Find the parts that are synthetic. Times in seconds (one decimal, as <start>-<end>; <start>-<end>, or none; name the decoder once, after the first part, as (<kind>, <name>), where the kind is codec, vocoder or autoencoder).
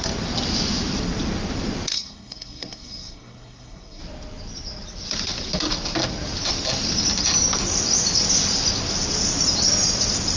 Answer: 1.9-4.0 (codec, SNAC)